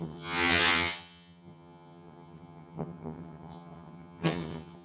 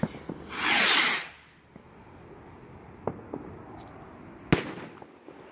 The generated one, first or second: first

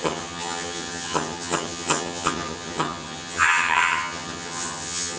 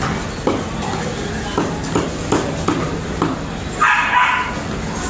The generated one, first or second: first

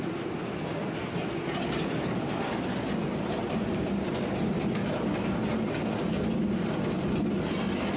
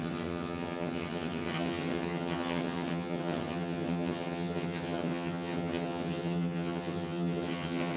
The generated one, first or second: second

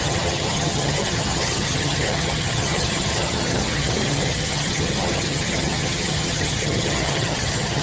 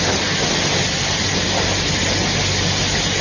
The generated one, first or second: first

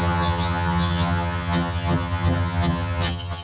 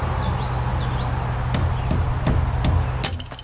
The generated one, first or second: first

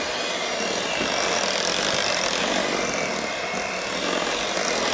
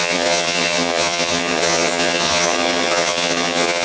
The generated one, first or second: second